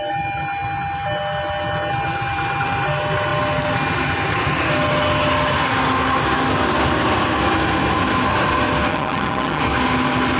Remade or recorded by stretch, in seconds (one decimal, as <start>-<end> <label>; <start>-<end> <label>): 0.0-8.9 recorded; 8.9-9.6 remade; 9.6-10.4 recorded